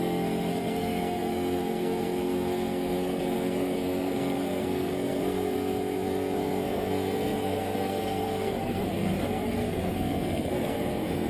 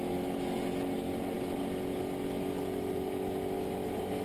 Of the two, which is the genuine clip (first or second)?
second